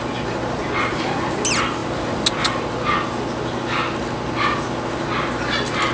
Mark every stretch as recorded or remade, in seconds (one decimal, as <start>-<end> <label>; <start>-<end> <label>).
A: 0.0-5.9 recorded